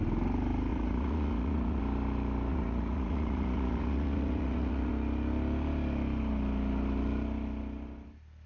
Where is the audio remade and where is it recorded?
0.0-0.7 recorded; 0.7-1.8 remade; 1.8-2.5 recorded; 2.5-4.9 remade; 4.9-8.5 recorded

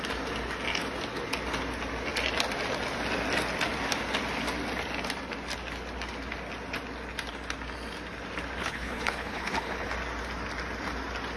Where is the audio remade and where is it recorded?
0.0-8.6 recorded; 8.6-9.9 remade; 9.9-11.4 recorded

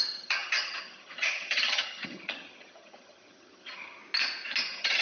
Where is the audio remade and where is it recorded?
0.0-4.0 remade; 4.0-4.6 recorded; 4.6-5.0 remade

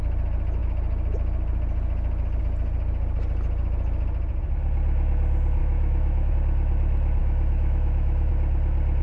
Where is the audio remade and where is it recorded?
0.0-5.6 recorded; 5.6-6.3 remade; 6.3-7.2 recorded; 7.2-8.3 remade; 8.3-9.0 recorded

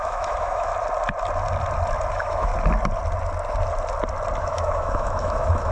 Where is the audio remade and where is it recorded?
0.0-0.7 remade; 0.7-2.1 recorded; 2.1-2.5 remade; 2.5-4.4 recorded; 4.4-5.7 remade

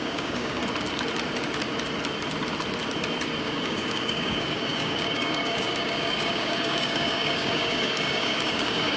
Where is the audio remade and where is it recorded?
0.0-0.6 remade; 0.6-3.4 recorded; 3.4-9.0 remade